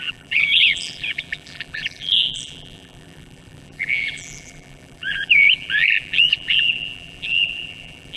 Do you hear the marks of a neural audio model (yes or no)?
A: yes